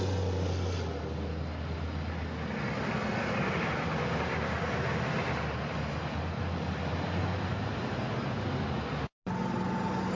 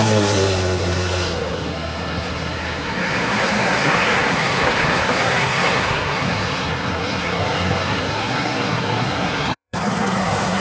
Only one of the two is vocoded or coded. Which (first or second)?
second